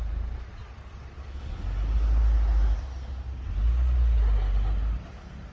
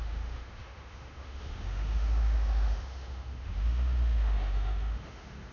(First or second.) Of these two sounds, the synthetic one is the second